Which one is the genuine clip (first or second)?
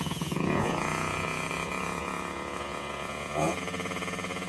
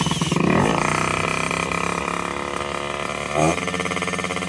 second